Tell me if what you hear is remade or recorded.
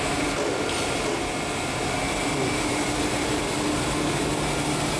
recorded